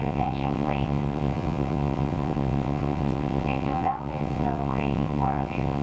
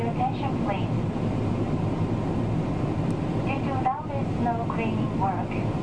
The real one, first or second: second